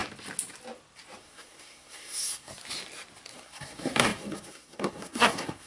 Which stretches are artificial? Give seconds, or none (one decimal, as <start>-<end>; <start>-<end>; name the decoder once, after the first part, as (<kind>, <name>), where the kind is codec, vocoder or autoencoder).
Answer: 1.2-2.5 (codec, SNAC); 3.3-5.7